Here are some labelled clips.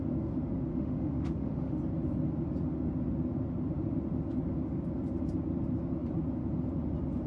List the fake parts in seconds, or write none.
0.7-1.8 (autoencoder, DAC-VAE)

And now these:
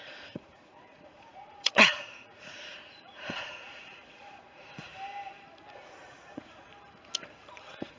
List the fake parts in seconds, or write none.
0.0-4.9 (vocoder, Vocos); 5.7-6.7; 7.5-8.0

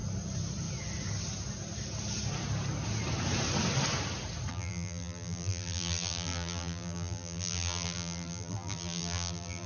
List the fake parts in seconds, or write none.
4.5-9.7 (vocoder, BigVGAN v2)

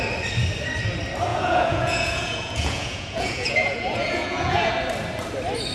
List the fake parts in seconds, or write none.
1.3-4.7 (vocoder, Vocos)